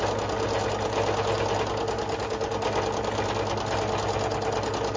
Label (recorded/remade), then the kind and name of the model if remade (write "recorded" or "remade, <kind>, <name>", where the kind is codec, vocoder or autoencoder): recorded